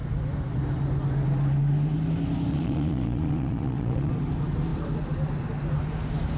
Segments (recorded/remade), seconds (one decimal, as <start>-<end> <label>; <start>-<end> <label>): 0.0-2.5 recorded; 2.5-4.1 remade; 4.1-6.4 recorded